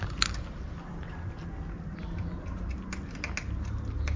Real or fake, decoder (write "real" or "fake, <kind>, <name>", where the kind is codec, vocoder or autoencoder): real